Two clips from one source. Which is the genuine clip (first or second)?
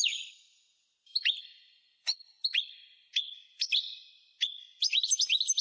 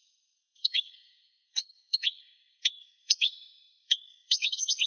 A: first